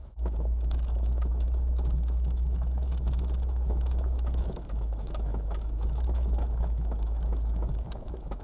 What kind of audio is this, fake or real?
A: fake